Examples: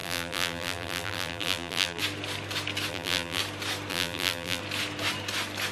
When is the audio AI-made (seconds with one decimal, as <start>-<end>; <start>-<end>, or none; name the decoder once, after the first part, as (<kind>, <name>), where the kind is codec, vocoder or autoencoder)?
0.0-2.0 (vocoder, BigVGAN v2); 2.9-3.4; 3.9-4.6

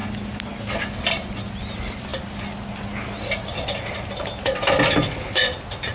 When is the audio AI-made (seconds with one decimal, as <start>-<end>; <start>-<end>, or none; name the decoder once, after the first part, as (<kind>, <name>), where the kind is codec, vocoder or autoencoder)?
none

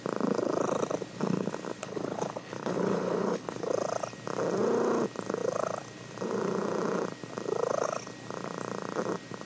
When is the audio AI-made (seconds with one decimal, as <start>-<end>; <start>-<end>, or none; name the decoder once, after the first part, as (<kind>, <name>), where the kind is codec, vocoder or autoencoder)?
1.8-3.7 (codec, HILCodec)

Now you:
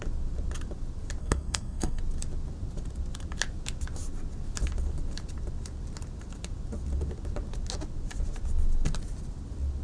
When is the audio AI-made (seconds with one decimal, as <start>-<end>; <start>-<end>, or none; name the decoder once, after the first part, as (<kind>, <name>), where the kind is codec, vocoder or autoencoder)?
1.2-2.0 (codec, SNAC)

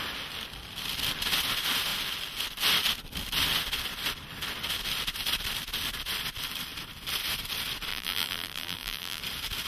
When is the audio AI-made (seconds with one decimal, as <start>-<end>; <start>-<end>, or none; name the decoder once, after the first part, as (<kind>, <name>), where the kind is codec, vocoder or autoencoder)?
7.9-9.2 (vocoder, BigVGAN v2)

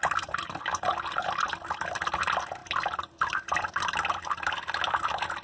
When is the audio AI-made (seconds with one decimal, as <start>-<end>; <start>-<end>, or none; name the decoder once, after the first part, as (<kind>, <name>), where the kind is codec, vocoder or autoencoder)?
none